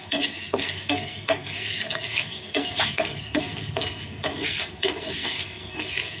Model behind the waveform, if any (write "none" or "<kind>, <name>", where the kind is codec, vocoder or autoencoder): codec, SNAC